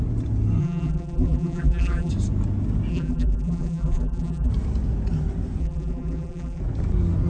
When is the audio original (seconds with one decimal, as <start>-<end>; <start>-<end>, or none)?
0.0-0.6; 2.1-2.9; 4.5-5.6; 6.6-7.3